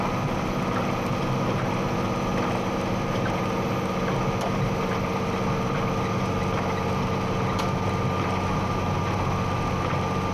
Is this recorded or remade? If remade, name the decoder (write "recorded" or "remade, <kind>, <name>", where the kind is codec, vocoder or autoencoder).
recorded